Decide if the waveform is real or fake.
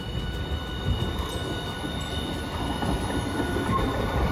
real